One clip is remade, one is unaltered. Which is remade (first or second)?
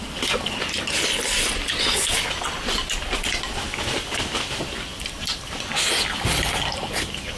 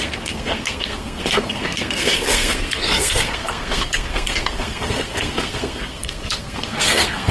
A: second